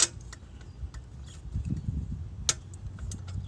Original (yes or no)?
yes